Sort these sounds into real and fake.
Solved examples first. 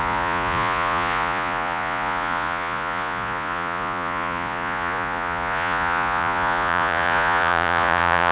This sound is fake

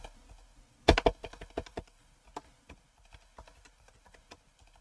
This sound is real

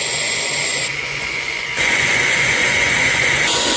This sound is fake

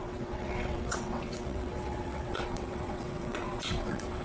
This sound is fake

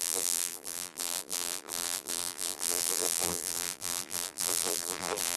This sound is fake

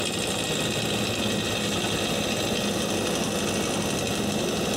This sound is real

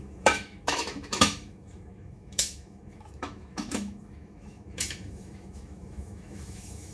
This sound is fake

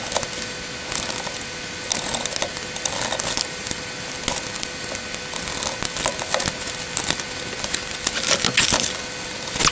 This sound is real